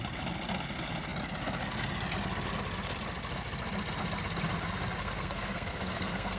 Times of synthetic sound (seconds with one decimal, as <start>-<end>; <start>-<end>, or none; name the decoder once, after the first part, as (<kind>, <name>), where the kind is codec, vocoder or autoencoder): 5.0-6.4 (codec, SNAC)